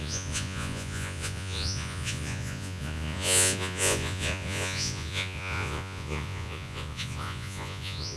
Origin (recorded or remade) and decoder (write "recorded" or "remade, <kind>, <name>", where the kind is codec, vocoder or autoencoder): remade, vocoder, Vocos